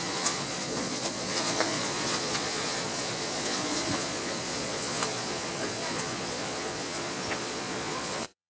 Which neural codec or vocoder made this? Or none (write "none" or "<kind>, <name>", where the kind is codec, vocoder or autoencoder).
vocoder, Vocos